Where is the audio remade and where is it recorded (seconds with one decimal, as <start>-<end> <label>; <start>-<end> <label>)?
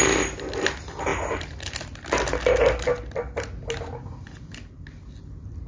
0.0-5.7 recorded